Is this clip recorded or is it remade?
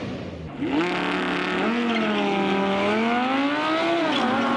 recorded